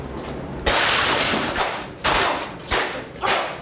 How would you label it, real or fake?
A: real